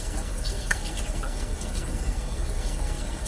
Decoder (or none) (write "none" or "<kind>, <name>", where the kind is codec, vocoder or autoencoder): codec, SNAC